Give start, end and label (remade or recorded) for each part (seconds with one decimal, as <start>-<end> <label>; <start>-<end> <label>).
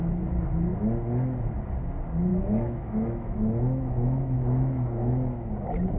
0.0-2.3 recorded; 2.3-5.5 remade; 5.5-6.0 recorded